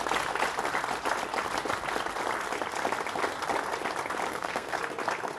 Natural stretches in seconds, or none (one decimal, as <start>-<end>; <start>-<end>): 0.0-4.3; 4.8-5.4